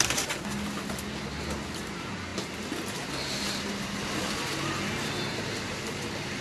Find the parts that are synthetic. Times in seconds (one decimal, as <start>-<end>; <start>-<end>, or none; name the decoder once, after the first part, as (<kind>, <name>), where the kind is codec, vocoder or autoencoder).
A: none